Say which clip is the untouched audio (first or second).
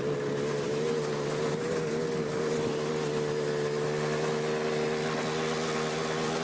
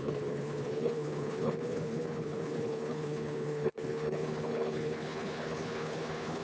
first